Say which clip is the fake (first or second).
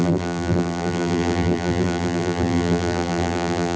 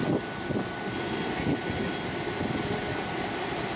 first